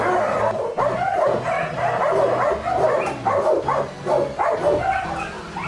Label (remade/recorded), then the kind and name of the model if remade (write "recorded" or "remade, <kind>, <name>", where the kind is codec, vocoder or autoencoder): recorded